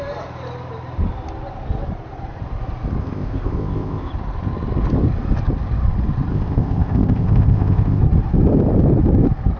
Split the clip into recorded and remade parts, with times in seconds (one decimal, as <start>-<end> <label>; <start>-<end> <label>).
0.0-3.0 recorded; 3.0-4.1 remade; 4.1-6.3 recorded; 6.3-8.0 remade; 8.0-9.6 recorded